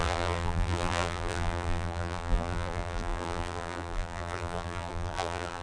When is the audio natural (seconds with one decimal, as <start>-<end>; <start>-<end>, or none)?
none